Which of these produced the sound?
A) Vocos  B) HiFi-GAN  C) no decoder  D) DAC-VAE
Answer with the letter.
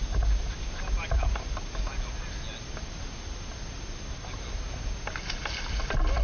C